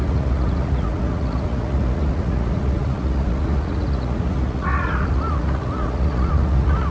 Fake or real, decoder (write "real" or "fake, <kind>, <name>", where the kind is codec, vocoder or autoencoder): fake, vocoder, Vocos